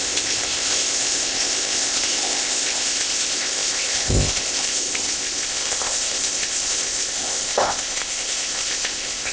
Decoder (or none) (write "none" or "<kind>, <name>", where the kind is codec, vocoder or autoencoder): codec, ZipCodec